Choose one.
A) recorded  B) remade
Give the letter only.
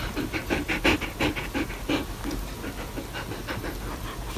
A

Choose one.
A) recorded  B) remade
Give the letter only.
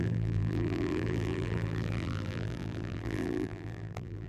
B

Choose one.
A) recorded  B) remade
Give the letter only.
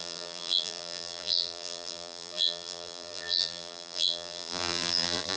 B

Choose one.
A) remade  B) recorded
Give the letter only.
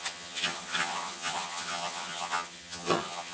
A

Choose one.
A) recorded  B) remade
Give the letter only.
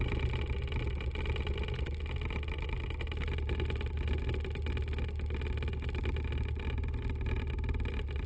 A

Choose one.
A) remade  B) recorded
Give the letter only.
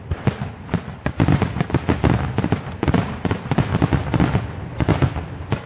B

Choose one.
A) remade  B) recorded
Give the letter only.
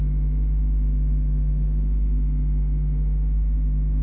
A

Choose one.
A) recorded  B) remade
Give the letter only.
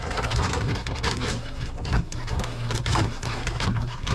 B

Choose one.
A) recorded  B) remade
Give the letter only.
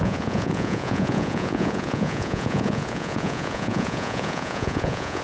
B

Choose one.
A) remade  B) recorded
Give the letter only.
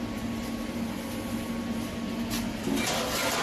B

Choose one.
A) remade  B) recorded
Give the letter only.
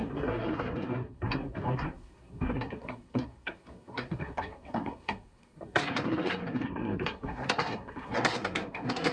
A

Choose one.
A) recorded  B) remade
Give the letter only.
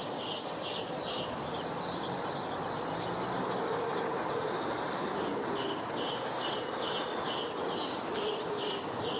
A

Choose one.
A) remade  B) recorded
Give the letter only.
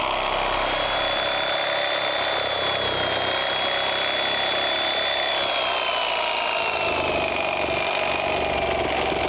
B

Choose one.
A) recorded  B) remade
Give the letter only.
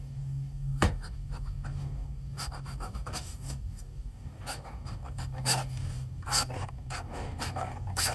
B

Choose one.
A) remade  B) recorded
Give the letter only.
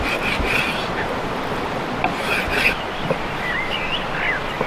B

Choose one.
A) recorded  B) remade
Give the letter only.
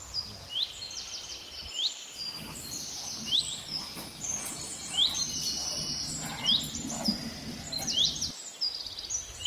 A